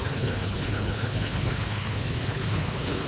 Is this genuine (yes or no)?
no